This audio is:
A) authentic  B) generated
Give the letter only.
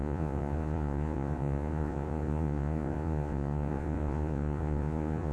B